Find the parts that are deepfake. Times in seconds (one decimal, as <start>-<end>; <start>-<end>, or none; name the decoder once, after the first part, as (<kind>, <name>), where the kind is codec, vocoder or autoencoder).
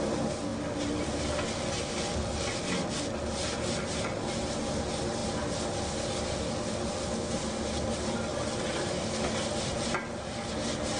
0.5-1.2 (vocoder, BigVGAN v2)